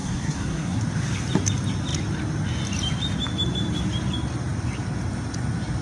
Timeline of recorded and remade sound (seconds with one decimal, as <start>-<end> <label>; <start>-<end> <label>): 0.0-0.8 remade; 0.8-5.8 recorded